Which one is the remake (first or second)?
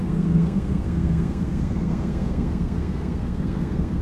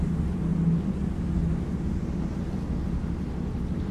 first